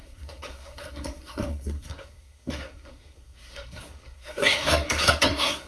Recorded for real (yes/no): no